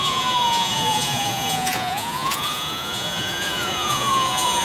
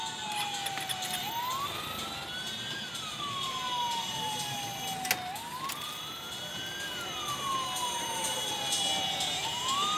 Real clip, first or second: second